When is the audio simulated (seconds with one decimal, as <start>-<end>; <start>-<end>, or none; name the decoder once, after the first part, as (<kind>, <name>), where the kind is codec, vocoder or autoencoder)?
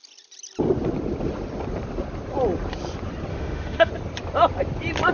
3.3-3.9 (autoencoder, DAC-VAE)